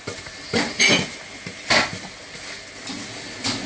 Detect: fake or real real